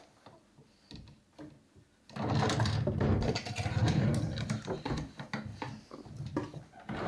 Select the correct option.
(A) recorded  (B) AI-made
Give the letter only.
A